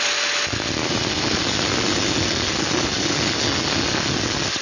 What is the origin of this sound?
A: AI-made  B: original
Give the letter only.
B